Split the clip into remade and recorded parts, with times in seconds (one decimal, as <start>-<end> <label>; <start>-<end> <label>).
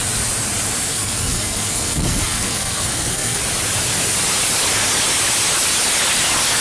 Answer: 0.0-0.9 recorded; 0.9-3.4 remade; 3.4-6.6 recorded